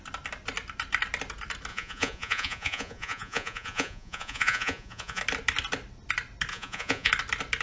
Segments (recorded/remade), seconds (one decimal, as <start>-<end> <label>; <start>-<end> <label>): 0.0-1.7 recorded; 1.7-5.2 remade; 5.2-6.5 recorded; 6.5-7.1 remade; 7.1-7.6 recorded